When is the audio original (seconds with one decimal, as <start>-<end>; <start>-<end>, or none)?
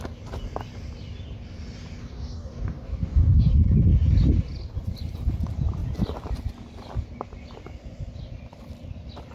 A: 0.0-2.0; 3.5-9.3